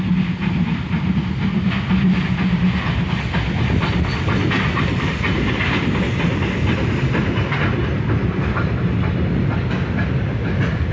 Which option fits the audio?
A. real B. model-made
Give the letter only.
A